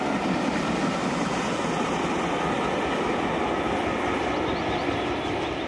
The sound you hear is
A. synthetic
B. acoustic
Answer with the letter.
B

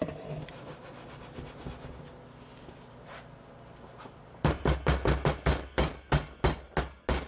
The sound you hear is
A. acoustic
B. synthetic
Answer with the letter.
A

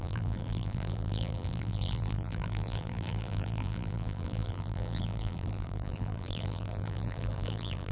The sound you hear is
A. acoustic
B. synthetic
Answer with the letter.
B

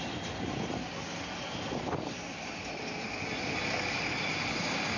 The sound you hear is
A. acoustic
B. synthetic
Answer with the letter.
A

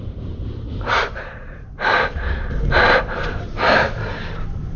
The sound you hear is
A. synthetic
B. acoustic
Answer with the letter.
A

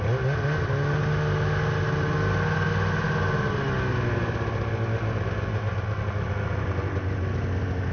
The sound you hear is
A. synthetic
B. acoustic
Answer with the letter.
B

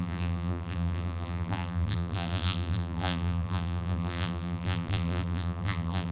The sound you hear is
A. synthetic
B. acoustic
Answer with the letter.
A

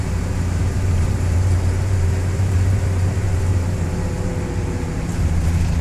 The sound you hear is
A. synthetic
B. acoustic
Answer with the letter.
A